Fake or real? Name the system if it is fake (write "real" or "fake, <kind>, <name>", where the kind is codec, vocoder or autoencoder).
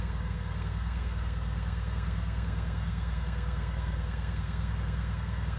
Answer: fake, codec, SNAC